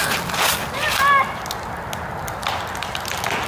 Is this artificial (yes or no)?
no